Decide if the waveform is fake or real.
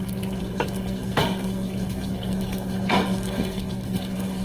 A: fake